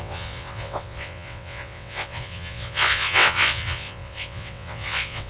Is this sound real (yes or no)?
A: no